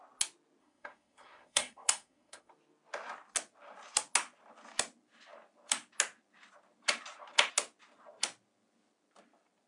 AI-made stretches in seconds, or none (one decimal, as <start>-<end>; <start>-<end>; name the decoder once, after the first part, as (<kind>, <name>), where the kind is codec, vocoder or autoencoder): 0.6-2.5 (codec, SNAC)